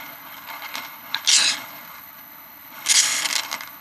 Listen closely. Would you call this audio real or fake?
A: fake